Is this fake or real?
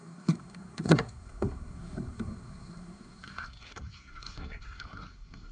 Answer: fake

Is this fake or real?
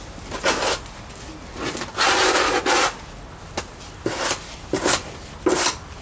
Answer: real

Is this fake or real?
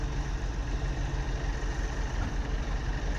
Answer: real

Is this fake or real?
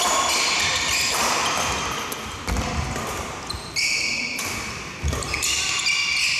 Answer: real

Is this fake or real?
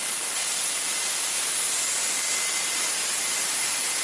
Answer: real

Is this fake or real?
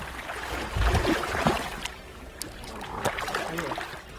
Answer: real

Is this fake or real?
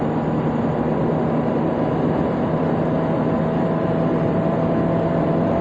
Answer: real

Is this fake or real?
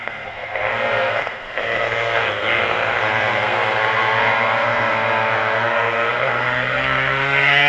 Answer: fake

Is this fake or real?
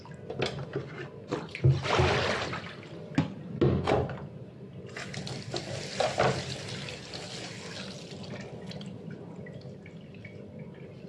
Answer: real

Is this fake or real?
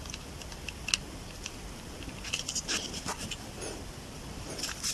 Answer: real